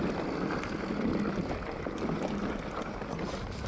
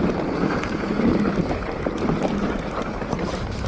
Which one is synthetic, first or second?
second